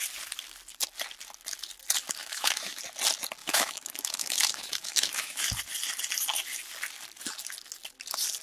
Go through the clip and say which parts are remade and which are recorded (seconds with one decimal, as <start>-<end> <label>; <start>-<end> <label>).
0.0-2.2 recorded; 2.2-2.8 remade; 2.8-3.4 recorded; 3.4-5.5 remade; 5.5-8.4 recorded